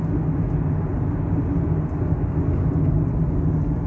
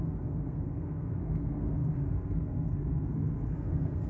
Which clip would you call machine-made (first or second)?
second